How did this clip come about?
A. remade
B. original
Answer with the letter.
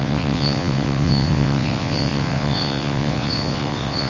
A